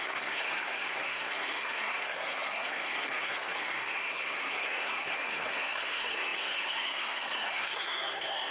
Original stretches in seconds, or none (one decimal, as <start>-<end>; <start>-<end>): none